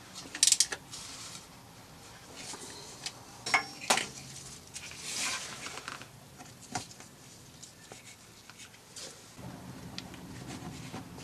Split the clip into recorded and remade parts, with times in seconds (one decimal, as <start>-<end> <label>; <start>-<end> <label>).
0.0-11.2 recorded